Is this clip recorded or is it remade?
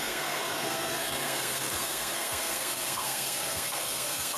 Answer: remade